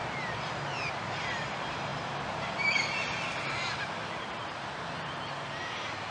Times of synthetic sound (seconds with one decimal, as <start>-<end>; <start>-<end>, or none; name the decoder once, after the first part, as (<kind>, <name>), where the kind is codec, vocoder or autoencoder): 0.0-1.9 (vocoder, BigVGAN v2); 5.6-6.1